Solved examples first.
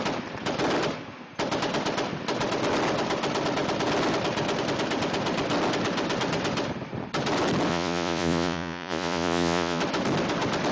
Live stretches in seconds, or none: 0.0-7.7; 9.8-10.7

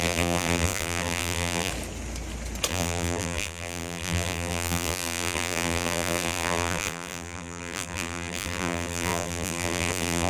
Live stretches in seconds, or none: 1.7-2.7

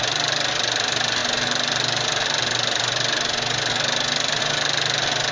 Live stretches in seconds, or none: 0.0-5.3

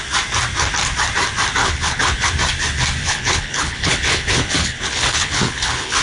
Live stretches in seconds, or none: 0.0-1.6; 2.3-3.0